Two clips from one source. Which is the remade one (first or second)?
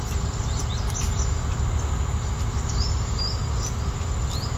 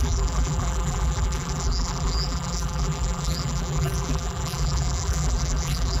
second